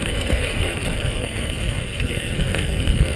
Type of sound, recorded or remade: remade